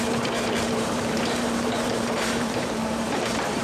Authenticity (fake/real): fake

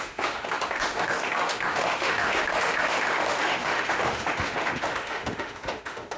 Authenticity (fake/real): fake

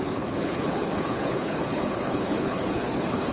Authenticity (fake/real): fake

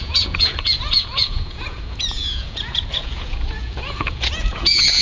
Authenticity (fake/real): fake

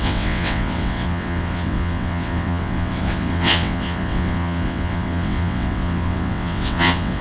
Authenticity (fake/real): fake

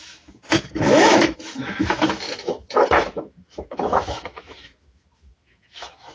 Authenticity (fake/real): fake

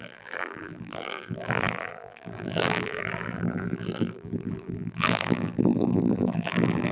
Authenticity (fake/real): fake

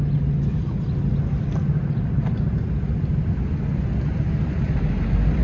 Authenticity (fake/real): real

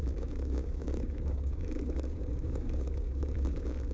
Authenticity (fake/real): fake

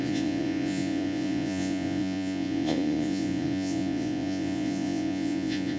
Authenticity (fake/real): fake